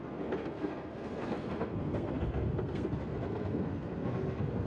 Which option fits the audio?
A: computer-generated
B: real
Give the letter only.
A